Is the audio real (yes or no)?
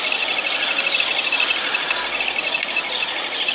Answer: yes